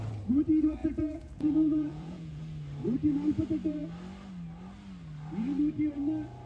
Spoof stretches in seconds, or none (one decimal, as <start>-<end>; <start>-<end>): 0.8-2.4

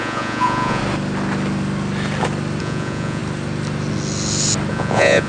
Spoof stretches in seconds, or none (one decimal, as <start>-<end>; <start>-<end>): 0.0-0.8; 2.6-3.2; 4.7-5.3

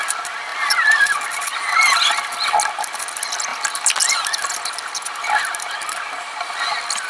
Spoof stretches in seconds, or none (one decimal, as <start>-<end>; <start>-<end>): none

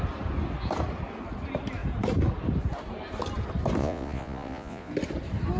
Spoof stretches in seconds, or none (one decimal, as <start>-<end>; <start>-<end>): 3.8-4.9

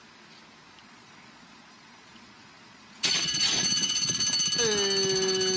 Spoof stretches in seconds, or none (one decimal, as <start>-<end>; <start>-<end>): 0.8-4.2

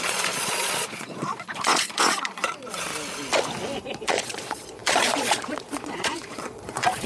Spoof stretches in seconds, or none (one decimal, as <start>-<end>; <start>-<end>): 0.0-2.9; 3.8-7.1